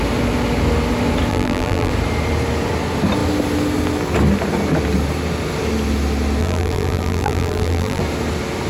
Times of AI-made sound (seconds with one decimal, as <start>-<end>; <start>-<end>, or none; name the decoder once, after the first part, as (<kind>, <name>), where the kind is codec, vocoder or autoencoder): 1.3-1.9 (vocoder, BigVGAN v2); 6.4-8.0